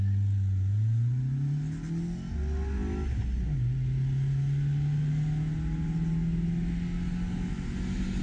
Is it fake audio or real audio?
real